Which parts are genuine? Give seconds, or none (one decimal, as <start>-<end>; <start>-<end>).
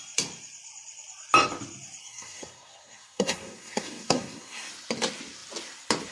0.0-2.0; 4.7-6.1